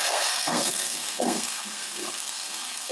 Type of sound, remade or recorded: remade